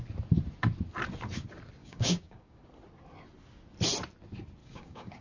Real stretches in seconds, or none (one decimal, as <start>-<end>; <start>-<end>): 0.0-1.8; 2.6-4.6